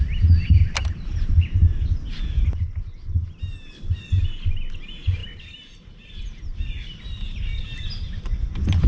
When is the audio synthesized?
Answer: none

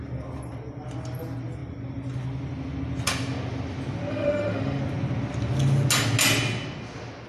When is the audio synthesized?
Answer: 4.1-4.8 (autoencoder, DAC-VAE)

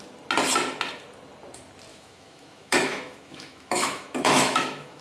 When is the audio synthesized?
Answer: 1.9-5.0 (autoencoder, DAC-VAE)

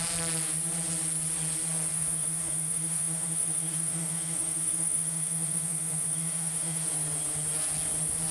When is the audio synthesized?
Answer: 1.9-6.9 (autoencoder, DAC-VAE)

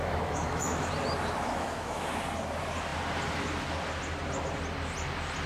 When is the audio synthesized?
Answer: 0.0-0.9 (autoencoder, DAC-VAE); 1.4-2.1